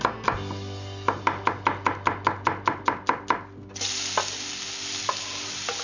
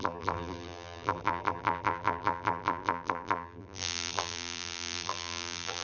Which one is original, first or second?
first